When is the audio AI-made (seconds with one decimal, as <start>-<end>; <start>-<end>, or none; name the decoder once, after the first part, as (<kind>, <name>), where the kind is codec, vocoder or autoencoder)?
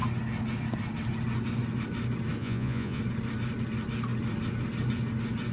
2.4-3.0 (vocoder, Vocos)